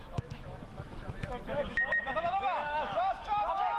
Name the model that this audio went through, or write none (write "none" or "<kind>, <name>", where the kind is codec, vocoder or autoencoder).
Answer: autoencoder, DAC-VAE